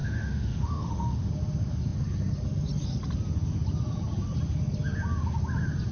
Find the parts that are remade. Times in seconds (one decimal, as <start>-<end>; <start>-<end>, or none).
0.0-1.3